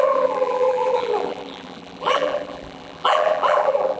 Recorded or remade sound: remade